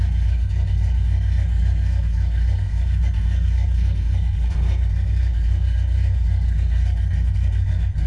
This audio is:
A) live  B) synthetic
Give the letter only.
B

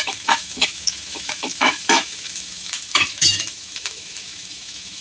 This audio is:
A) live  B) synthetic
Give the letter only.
B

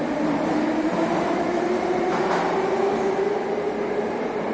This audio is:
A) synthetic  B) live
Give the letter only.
B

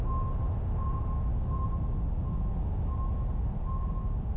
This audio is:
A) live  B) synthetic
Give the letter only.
A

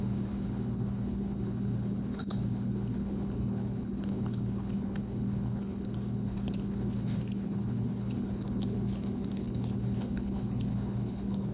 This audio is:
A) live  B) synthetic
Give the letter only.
B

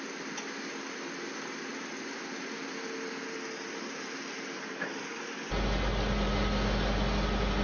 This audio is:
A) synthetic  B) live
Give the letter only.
B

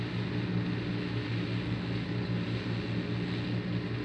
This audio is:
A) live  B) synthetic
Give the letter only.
A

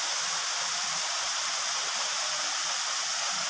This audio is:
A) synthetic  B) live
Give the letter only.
B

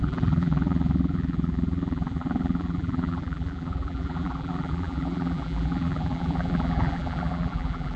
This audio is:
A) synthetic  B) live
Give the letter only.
A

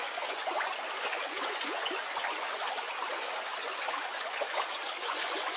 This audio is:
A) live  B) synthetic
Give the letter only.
B